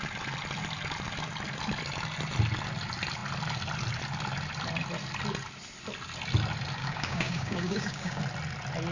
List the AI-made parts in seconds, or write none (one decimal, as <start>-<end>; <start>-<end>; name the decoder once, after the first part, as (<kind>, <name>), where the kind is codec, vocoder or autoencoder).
6.8-8.2 (codec, DAC)